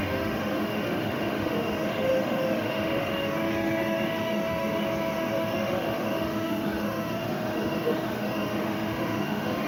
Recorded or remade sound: remade